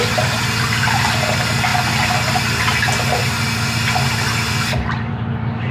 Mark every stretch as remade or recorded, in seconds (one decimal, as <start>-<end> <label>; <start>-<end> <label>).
0.0-5.7 recorded